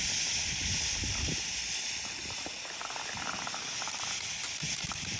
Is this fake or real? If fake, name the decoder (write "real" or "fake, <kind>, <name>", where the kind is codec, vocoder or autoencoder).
real